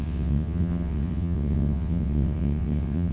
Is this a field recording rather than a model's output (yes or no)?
no